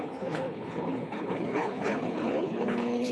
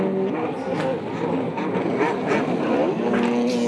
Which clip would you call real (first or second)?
second